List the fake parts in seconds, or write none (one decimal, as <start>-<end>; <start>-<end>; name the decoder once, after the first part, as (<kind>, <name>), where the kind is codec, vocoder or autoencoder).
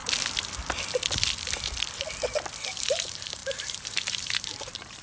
2.6-5.0 (vocoder, BigVGAN v2)